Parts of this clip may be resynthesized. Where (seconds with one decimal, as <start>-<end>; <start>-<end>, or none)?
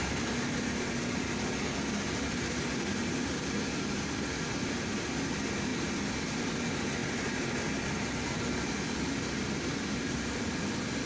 none